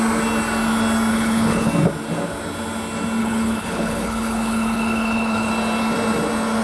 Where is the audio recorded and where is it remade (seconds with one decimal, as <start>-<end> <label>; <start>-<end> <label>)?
0.0-1.1 recorded; 1.1-1.7 remade; 1.7-3.2 recorded; 3.2-5.5 remade; 5.5-6.6 recorded